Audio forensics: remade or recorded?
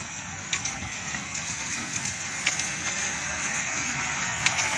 remade